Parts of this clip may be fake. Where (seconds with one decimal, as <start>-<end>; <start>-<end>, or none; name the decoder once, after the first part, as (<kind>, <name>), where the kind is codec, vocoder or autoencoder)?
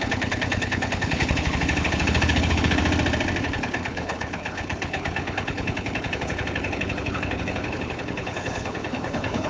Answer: 0.0-2.8 (codec, HILCodec); 3.4-9.5